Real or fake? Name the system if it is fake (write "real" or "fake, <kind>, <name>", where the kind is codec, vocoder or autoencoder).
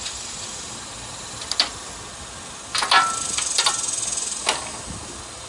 real